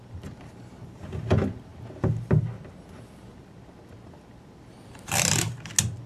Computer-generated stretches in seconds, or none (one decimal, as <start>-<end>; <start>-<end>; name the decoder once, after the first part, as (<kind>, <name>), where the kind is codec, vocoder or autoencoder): none